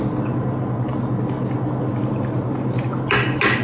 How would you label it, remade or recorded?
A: recorded